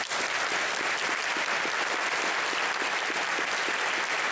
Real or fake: real